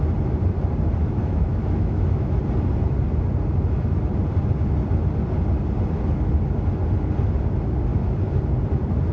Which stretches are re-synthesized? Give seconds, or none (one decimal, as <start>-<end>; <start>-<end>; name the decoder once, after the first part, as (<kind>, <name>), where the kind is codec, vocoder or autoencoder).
1.0-2.4 (autoencoder, DAC-VAE); 7.9-8.4